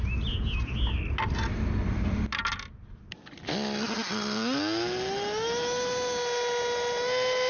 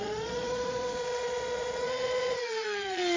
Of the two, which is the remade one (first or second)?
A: second